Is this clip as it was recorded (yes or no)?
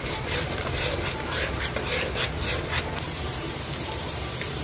no